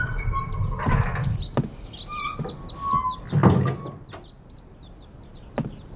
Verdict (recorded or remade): recorded